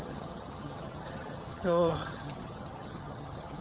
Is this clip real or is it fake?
fake